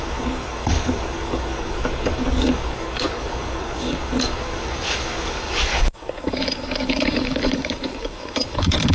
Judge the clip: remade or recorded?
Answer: remade